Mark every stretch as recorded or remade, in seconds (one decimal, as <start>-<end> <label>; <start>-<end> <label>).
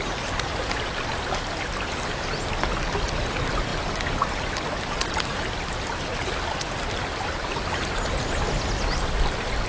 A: 0.0-9.7 recorded